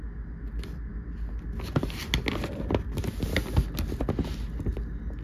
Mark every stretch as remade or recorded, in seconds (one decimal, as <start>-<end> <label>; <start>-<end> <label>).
0.0-5.2 recorded